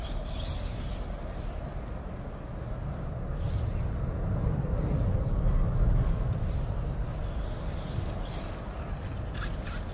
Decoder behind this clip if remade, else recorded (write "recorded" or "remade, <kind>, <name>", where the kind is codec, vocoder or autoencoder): recorded